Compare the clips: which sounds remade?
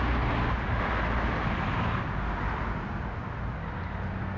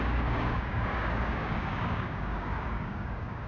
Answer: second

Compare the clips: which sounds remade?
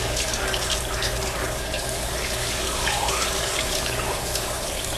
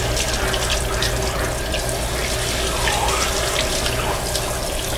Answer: first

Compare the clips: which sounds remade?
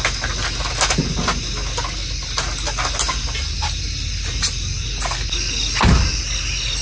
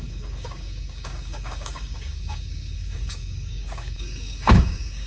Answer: second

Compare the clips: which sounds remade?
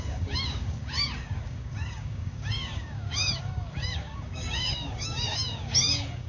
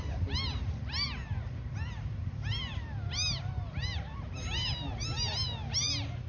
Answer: first